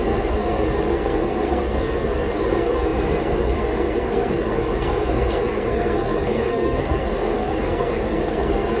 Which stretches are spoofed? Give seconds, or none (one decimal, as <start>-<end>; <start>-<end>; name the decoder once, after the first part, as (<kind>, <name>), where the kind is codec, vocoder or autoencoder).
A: 0.0-8.8 (codec, SNAC)